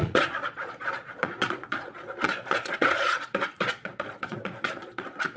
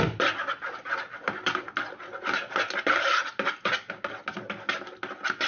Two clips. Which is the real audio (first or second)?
second